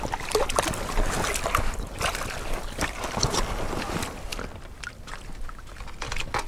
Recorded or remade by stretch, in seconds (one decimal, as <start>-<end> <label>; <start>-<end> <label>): 0.0-6.5 recorded